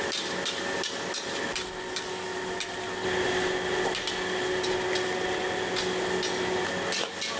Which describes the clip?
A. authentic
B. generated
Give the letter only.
A